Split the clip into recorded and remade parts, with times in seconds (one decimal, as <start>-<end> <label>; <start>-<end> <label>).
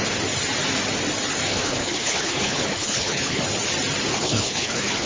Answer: 0.0-1.5 recorded; 1.5-3.4 remade; 3.4-4.1 recorded; 4.1-5.1 remade